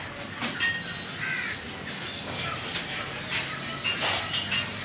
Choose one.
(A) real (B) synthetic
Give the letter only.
A